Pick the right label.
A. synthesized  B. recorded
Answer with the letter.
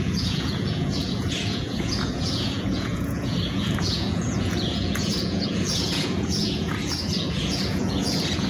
A